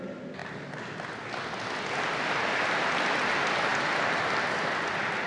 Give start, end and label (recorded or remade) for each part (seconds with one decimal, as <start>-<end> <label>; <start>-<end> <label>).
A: 0.0-5.3 recorded